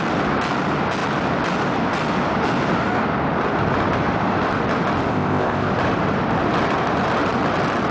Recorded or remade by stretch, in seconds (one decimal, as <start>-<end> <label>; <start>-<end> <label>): 0.0-5.1 recorded; 5.1-5.7 remade; 5.7-7.9 recorded